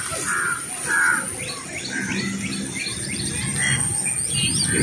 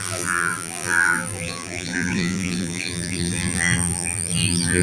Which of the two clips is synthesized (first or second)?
second